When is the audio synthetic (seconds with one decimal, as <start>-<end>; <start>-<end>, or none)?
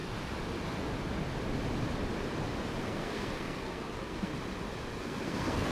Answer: 2.8-4.3; 5.0-5.7